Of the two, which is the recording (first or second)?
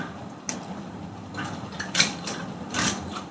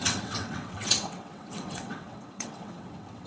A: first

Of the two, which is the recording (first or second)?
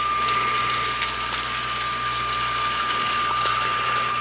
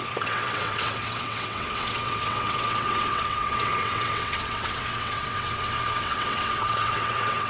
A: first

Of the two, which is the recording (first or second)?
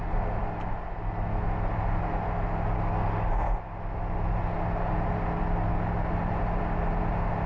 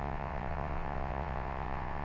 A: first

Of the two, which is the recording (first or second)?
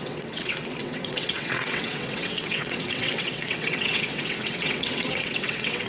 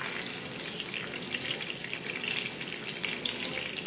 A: second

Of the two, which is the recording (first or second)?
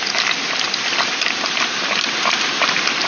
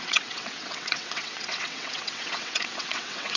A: first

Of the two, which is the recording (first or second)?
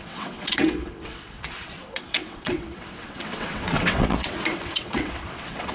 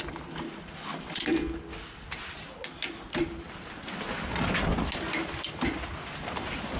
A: second